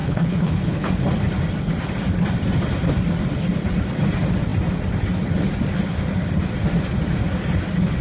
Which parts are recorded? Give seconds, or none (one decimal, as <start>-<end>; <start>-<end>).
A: 0.9-8.0